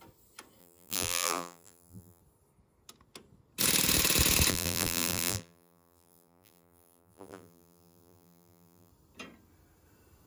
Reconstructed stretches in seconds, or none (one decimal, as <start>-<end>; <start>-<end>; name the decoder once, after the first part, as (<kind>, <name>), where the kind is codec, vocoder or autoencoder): 0.6-2.2 (vocoder, BigVGAN v2); 4.5-8.9